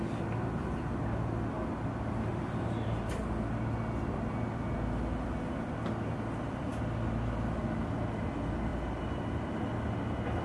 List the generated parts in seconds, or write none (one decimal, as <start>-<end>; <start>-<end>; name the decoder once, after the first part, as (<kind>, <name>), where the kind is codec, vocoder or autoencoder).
2.3-3.2 (vocoder, BigVGAN v2)